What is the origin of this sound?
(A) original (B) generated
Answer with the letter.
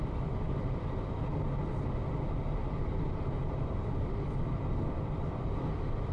A